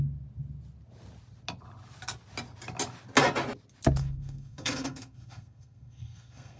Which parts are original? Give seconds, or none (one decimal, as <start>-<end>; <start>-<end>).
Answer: 0.0-4.0